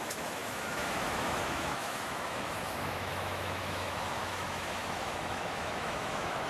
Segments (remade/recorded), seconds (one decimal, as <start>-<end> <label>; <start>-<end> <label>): 0.0-6.5 remade